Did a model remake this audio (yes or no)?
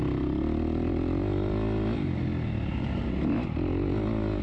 no